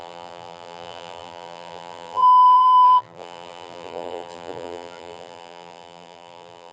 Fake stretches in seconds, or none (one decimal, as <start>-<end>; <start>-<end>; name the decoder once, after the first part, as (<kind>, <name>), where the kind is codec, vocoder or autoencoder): 0.0-6.7 (vocoder, BigVGAN v2)